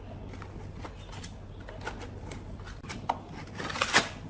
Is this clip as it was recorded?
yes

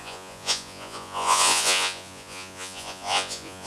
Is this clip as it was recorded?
no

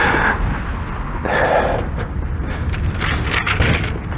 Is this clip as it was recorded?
yes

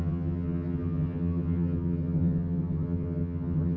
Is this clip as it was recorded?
no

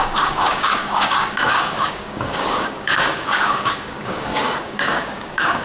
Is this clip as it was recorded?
no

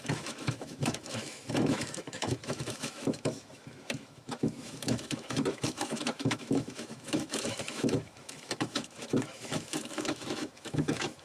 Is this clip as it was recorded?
no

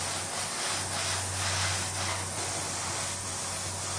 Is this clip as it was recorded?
yes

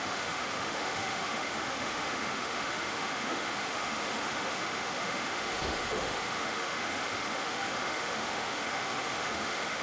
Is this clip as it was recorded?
no